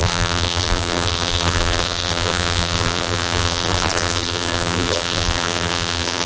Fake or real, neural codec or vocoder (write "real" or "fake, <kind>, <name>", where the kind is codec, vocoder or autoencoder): fake, vocoder, BigVGAN v2